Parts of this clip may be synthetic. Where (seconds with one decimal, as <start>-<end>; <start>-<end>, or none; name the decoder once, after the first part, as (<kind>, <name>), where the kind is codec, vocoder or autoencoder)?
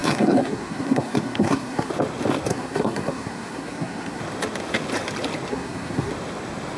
0.0-1.9 (codec, SNAC); 2.5-4.2; 5.5-6.1